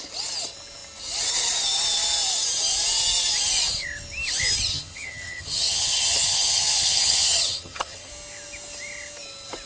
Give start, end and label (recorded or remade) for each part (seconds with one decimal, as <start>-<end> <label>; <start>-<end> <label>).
0.0-4.7 recorded; 4.7-8.1 remade; 8.1-9.7 recorded